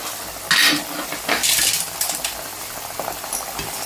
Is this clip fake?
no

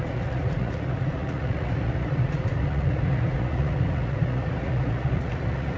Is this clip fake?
yes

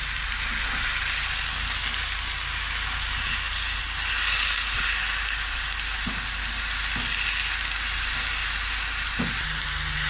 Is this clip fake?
no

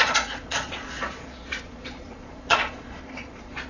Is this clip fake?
yes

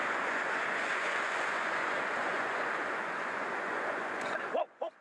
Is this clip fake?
yes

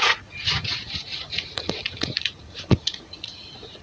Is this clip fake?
yes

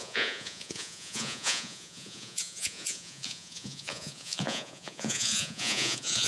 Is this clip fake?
yes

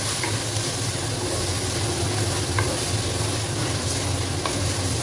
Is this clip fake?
no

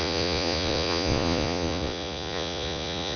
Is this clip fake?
yes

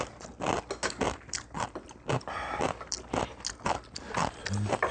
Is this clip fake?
no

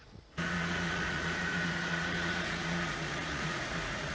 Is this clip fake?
yes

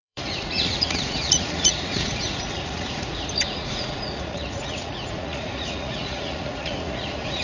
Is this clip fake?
yes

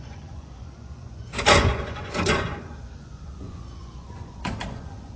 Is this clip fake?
yes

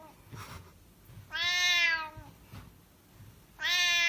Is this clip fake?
no